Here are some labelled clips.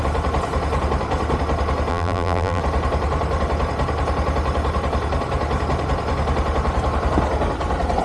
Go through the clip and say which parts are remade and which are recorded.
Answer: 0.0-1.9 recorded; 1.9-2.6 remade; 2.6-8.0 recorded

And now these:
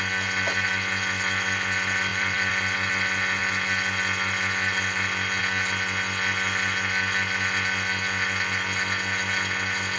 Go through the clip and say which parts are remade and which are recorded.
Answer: 0.0-2.1 recorded; 2.1-2.9 remade; 2.9-10.0 recorded

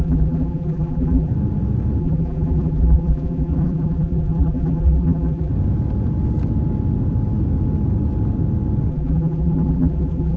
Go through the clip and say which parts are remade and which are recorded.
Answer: 0.0-1.3 remade; 1.3-2.0 recorded; 2.0-5.5 remade; 5.5-8.9 recorded; 8.9-10.4 remade

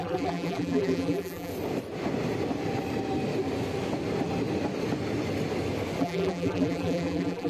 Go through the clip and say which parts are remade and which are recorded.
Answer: 0.0-1.5 remade; 1.5-6.0 recorded; 6.0-7.5 remade

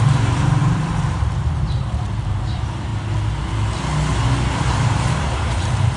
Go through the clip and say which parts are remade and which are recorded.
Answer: 0.0-2.9 remade; 2.9-4.5 recorded; 4.5-6.0 remade

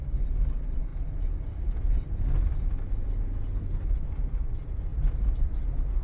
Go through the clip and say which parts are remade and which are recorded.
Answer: 0.0-6.0 recorded

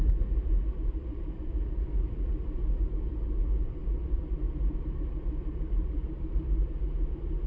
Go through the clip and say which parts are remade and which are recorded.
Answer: 0.0-0.4 recorded; 0.4-1.5 remade; 1.5-3.8 recorded; 3.8-6.7 remade; 6.7-7.5 recorded